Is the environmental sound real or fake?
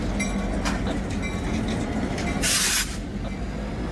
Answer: real